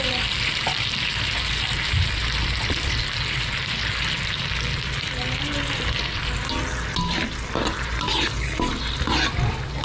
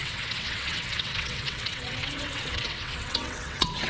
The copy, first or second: second